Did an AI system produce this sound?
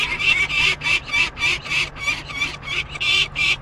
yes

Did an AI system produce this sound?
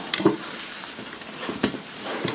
yes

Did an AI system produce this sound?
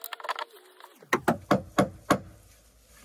no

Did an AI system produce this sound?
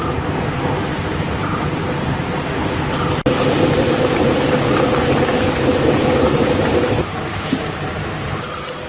yes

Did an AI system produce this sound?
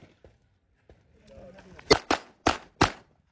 yes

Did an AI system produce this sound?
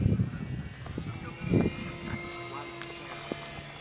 no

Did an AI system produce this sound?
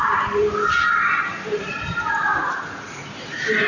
no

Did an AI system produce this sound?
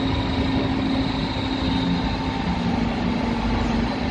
no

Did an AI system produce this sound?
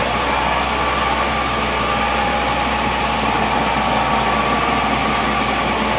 no